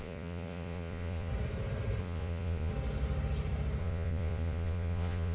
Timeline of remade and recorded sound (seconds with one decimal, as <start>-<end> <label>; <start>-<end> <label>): 0.0-1.3 remade; 1.3-2.0 recorded; 2.0-2.7 remade; 2.7-3.8 recorded; 3.8-5.3 remade